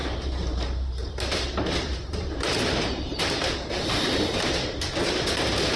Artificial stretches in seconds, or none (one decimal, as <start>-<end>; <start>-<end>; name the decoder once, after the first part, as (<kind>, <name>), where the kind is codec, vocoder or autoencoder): 0.0-3.5 (vocoder, BigVGAN v2)